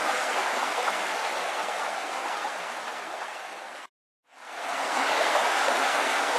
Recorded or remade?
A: remade